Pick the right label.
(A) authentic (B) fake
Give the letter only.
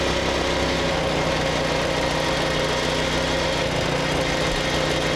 A